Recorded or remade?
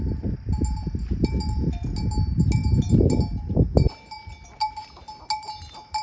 recorded